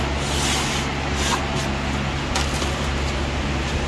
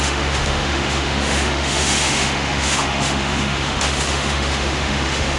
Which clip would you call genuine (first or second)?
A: first